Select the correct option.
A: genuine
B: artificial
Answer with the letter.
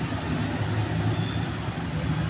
A